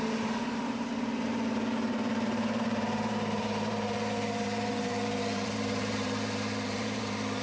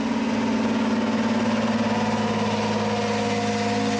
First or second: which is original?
second